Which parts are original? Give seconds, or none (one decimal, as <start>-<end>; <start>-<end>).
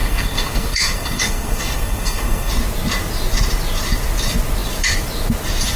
2.5-5.8